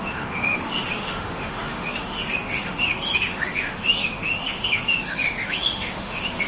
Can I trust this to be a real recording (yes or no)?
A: no